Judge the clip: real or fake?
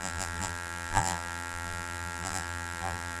fake